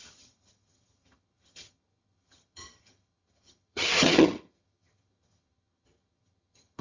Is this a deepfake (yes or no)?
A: yes